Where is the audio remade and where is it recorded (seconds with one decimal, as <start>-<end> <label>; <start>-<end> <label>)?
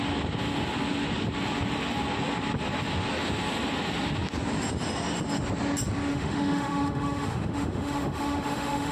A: 0.0-6.1 recorded; 6.1-8.9 remade